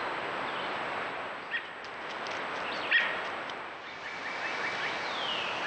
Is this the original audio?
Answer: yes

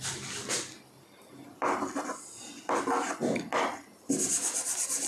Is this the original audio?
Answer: yes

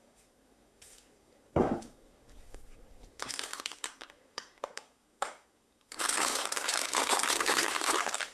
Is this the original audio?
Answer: no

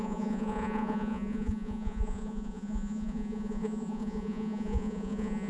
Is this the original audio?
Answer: no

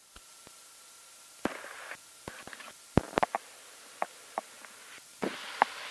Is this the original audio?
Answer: yes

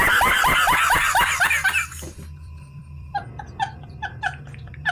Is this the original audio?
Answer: no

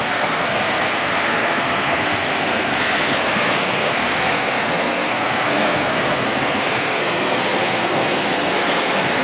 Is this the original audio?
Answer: no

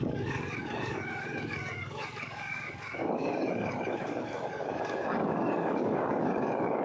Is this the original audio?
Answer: no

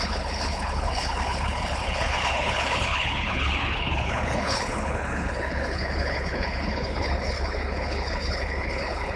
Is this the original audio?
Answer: no